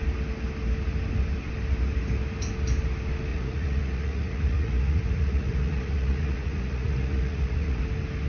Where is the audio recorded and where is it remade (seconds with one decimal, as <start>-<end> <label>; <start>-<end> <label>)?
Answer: 0.0-3.3 recorded; 3.3-7.8 remade; 7.8-8.3 recorded